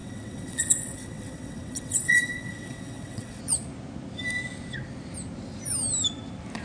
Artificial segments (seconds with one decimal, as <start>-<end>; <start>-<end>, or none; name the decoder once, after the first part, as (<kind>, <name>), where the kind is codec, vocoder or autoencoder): 0.0-3.4 (vocoder, WaveNeXt)